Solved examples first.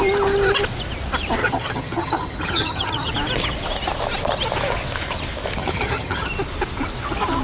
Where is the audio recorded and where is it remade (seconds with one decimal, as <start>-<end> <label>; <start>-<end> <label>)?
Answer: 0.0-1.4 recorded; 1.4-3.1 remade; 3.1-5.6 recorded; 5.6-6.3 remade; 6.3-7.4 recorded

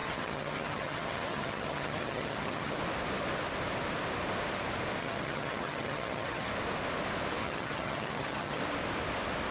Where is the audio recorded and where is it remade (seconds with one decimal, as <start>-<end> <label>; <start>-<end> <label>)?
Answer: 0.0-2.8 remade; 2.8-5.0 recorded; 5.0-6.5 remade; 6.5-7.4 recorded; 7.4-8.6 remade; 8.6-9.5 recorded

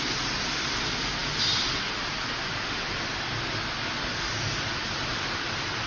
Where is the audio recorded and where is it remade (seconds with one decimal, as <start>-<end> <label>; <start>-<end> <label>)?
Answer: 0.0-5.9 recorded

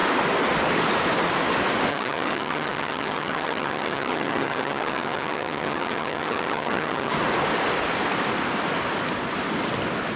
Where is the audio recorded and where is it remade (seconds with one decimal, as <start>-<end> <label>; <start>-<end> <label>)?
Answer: 0.0-1.9 recorded; 1.9-7.1 remade; 7.1-10.2 recorded

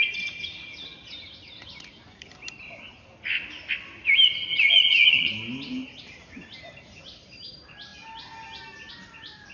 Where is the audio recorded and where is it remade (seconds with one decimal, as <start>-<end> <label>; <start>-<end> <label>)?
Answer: 0.0-4.5 recorded; 4.5-5.3 remade; 5.3-9.5 recorded

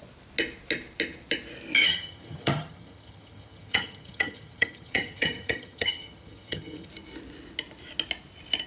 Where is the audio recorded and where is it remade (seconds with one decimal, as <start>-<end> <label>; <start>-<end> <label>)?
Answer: 0.0-1.8 recorded; 1.8-6.9 remade; 6.9-8.7 recorded

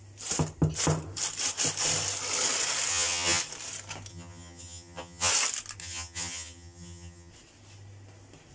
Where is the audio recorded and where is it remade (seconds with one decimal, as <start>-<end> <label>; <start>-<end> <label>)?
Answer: 0.0-2.9 recorded; 2.9-3.4 remade; 3.4-4.1 recorded; 4.1-5.3 remade; 5.3-5.8 recorded; 5.8-7.3 remade; 7.3-8.5 recorded

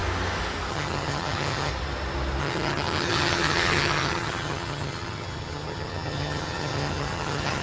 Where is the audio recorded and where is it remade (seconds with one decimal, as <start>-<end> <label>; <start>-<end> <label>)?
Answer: 0.0-0.7 recorded; 0.7-1.7 remade; 1.7-2.4 recorded; 2.4-7.6 remade